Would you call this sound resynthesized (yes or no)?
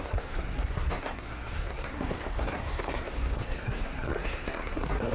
yes